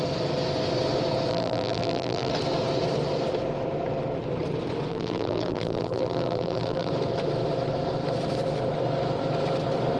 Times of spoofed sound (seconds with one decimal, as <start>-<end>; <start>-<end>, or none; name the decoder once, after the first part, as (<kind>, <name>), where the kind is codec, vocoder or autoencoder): 1.3-2.3 (vocoder, BigVGAN v2); 4.9-6.9